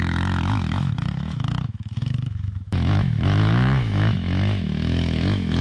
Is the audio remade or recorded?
remade